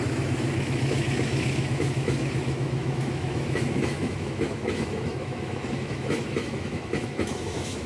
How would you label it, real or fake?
fake